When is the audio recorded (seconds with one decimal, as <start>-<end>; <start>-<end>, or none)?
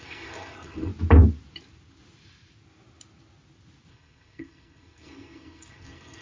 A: 0.9-3.9